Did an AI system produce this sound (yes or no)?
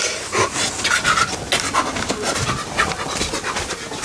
no